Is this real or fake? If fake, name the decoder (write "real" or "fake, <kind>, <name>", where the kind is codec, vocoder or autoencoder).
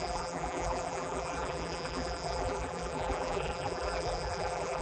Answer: fake, vocoder, BigVGAN v2